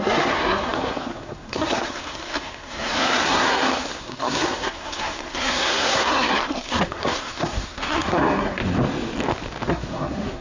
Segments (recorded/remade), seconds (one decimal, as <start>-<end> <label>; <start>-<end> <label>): 0.0-8.6 remade; 8.6-9.7 recorded; 9.7-10.4 remade